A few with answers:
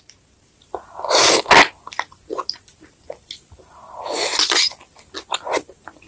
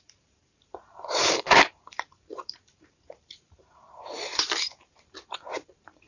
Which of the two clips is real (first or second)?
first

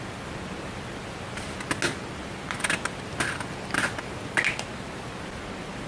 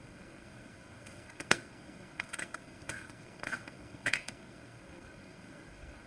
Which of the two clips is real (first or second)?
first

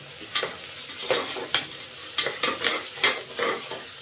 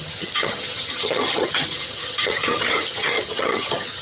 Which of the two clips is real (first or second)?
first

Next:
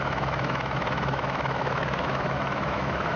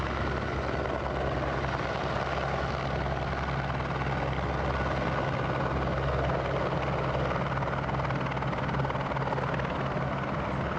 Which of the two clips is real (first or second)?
second